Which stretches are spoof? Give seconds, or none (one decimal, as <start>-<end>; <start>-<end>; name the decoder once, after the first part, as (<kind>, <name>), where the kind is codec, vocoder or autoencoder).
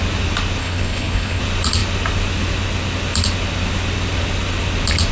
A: 0.6-1.4 (codec, HILCodec)